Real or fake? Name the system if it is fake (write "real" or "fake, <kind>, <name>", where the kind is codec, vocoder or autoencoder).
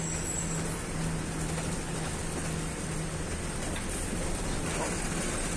real